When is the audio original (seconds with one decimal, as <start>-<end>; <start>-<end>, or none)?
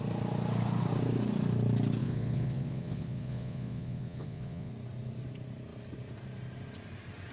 0.0-2.0; 4.7-7.3